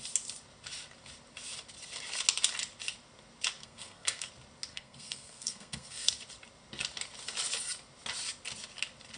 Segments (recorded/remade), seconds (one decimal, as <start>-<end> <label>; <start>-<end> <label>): 0.0-3.6 recorded; 3.6-4.3 remade; 4.3-4.7 recorded; 4.7-6.1 remade; 6.1-9.2 recorded